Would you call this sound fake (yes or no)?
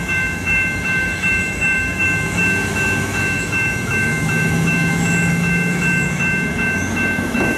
yes